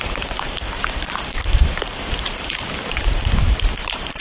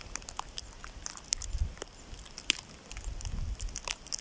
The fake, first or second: first